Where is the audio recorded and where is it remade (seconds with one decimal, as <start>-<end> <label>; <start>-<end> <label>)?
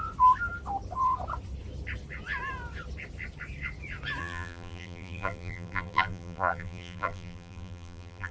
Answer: 0.0-4.2 recorded; 4.2-8.3 remade